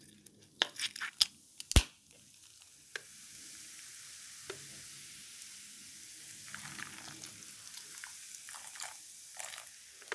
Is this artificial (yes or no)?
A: no